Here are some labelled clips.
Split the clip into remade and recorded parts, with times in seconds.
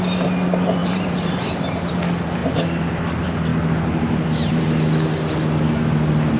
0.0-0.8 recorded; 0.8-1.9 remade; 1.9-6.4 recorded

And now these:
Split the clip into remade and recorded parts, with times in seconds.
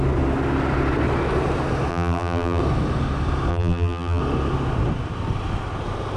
0.0-1.9 recorded; 1.9-2.6 remade; 2.6-3.5 recorded; 3.5-4.2 remade; 4.2-6.2 recorded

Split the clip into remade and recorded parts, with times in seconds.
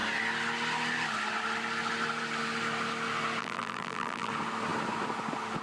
0.0-3.4 recorded; 3.4-4.3 remade; 4.3-5.6 recorded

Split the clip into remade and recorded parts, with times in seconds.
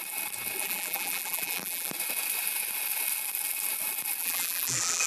0.0-0.6 recorded; 0.6-1.9 remade; 1.9-4.2 recorded; 4.2-5.1 remade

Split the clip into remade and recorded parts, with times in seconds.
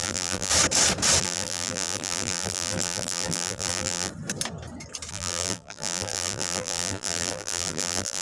0.0-0.5 remade; 0.5-1.2 recorded; 1.2-4.1 remade; 4.1-5.1 recorded; 5.1-8.2 remade